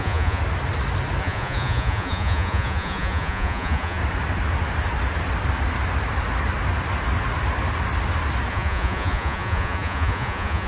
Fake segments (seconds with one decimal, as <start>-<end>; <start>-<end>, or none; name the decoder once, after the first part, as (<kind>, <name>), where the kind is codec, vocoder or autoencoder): 0.0-0.4 (vocoder, Vocos); 1.2-4.0; 8.5-10.7